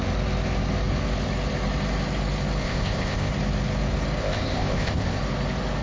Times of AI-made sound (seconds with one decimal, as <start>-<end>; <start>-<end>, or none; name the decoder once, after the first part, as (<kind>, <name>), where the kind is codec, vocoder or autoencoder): 2.6-3.3 (codec, ZipCodec); 4.2-5.2